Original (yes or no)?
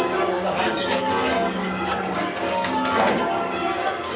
no